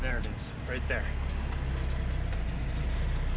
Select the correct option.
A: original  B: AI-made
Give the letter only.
A